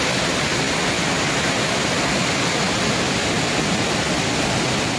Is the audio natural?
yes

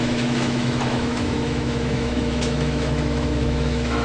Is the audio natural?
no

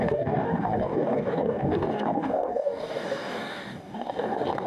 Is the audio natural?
no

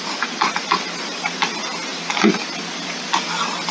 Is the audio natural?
yes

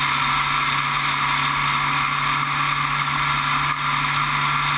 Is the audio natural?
yes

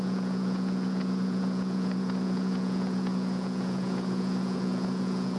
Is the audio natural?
no